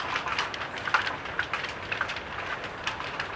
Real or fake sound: real